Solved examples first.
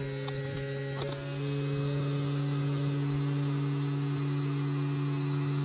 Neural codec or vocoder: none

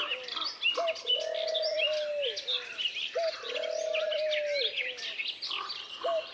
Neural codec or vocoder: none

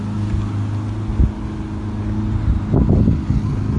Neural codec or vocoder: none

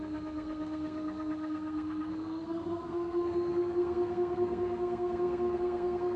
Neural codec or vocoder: codec, SNAC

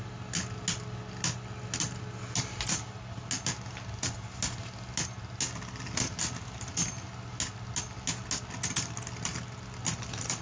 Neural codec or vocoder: none